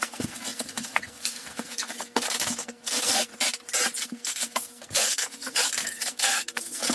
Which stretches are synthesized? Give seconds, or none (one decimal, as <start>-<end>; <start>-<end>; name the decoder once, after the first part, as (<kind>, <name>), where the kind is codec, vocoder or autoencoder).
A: 0.0-3.3 (codec, SNAC); 4.0-6.9